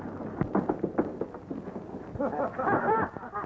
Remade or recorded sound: recorded